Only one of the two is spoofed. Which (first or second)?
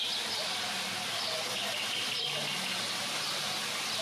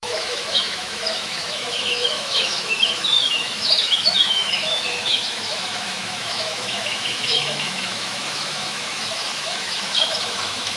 second